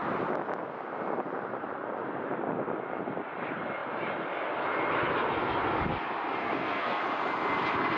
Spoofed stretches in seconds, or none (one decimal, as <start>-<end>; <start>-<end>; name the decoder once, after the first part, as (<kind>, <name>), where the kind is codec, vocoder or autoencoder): 6.4-7.0 (codec, SNAC)